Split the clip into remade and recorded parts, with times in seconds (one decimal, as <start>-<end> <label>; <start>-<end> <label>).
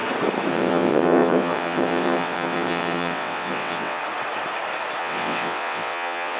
0.0-0.5 recorded; 0.5-4.0 remade; 4.0-5.0 recorded; 5.0-6.4 remade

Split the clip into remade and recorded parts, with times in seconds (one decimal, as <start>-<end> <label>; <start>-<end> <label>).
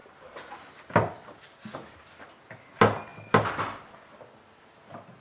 0.0-5.2 recorded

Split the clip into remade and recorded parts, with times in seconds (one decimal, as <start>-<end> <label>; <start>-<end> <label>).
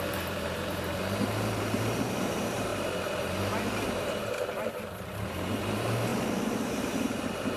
0.0-2.7 remade; 2.7-3.3 recorded; 3.3-6.1 remade; 6.1-6.7 recorded; 6.7-7.6 remade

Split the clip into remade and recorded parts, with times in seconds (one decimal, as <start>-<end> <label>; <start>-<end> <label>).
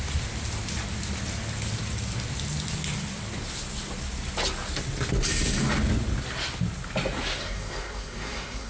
0.0-7.4 recorded; 7.4-8.7 remade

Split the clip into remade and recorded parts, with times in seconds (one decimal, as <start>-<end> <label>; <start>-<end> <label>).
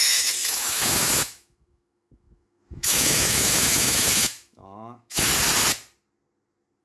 0.0-5.3 remade; 5.3-6.8 recorded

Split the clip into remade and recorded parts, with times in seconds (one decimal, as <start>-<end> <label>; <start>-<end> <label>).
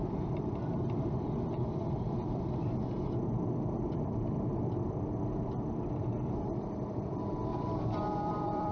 0.0-7.5 remade; 7.5-8.1 recorded; 8.1-8.7 remade